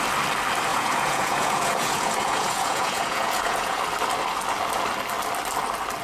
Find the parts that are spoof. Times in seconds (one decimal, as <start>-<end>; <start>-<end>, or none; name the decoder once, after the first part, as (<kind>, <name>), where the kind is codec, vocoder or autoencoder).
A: 0.7-3.8 (vocoder, Vocos)